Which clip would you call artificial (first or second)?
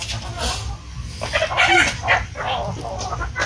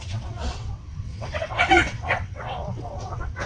second